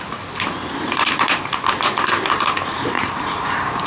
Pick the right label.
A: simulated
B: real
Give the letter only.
A